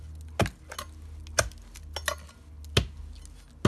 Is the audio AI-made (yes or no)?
no